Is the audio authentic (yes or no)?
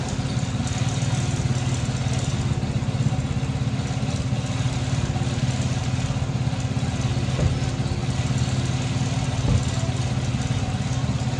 yes